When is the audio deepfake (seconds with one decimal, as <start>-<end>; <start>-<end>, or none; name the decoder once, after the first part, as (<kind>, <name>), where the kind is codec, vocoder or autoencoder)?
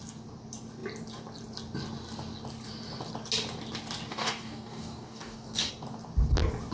4.1-5.7 (codec, DAC)